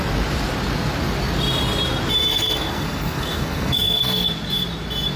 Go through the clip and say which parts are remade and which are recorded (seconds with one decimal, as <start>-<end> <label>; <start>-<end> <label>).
0.0-2.3 recorded; 2.3-4.3 remade; 4.3-5.2 recorded